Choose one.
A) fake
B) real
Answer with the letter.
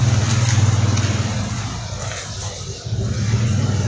B